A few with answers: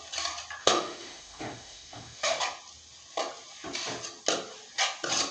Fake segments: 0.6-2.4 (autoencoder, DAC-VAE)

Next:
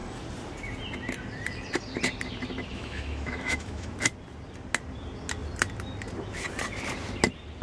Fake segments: 2.7-3.9 (autoencoder, DAC-VAE)

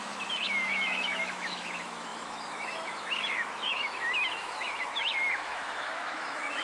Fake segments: 0.0-6.6 (autoencoder, DAC-VAE)